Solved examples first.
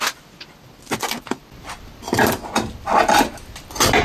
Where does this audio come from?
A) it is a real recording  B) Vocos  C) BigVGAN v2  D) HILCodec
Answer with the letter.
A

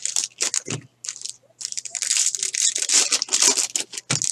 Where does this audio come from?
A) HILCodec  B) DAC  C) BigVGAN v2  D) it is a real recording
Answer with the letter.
D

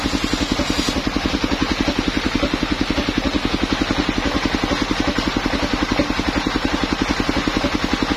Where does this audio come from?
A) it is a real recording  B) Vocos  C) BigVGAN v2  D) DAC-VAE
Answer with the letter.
A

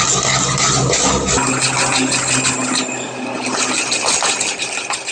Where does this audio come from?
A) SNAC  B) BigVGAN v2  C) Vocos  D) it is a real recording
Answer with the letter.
D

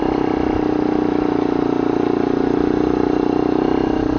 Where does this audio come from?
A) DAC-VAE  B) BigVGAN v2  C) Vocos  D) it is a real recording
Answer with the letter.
D